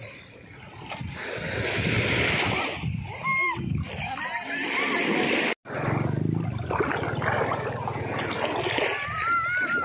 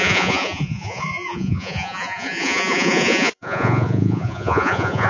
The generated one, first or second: second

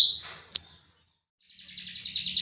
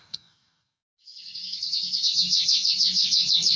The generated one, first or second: second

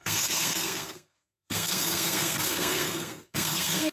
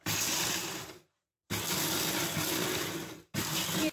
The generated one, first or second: first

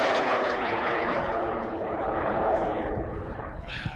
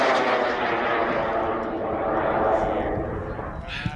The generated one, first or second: first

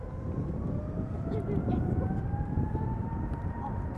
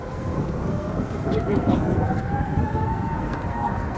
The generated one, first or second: second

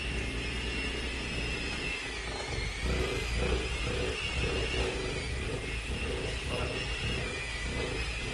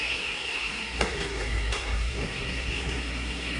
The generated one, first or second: second